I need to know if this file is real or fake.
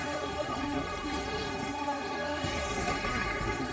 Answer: fake